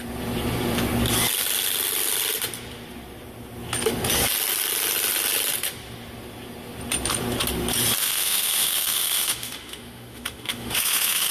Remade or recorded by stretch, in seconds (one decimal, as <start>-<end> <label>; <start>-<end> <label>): 0.0-8.0 recorded; 8.0-11.3 remade